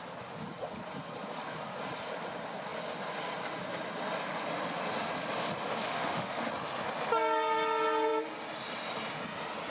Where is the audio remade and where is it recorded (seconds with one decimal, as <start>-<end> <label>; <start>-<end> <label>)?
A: 0.0-5.8 recorded; 5.8-6.5 remade; 6.5-9.7 recorded